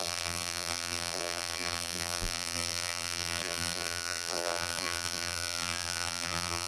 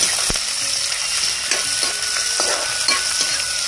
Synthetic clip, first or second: first